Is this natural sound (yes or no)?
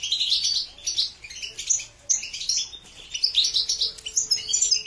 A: yes